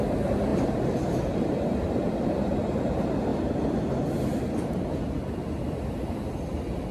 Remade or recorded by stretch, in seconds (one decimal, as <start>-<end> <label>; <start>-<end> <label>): 0.0-0.5 recorded; 0.5-2.6 remade; 2.6-6.9 recorded